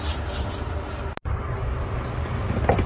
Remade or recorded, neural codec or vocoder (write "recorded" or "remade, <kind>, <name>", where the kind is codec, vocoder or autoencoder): recorded